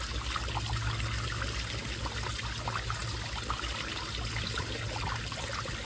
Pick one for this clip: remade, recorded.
recorded